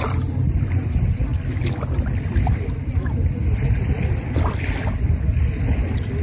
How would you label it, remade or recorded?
recorded